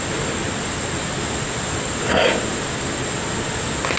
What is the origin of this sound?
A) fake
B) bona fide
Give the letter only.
B